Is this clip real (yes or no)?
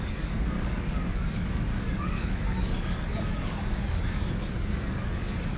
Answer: no